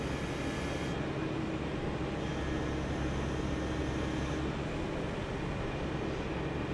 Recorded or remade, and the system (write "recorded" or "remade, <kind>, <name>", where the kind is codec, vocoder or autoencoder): recorded